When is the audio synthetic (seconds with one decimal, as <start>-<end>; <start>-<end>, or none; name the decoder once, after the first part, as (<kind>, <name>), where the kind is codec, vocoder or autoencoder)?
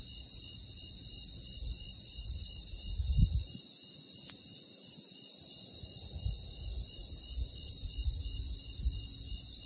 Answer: none